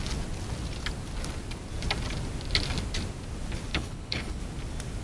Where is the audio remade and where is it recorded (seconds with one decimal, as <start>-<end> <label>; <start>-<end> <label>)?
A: 0.0-3.7 recorded; 3.7-4.4 remade; 4.4-5.0 recorded